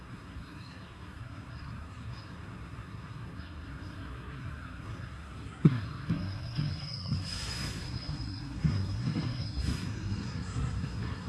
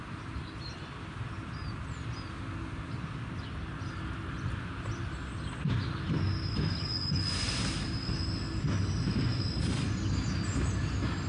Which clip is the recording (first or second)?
second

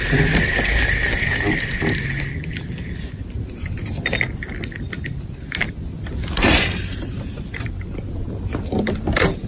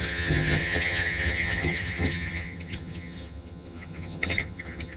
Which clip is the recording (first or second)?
first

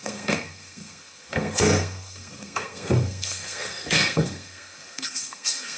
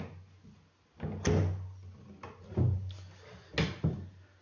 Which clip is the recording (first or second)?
second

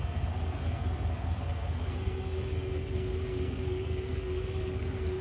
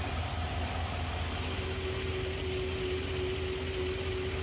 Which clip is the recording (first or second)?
second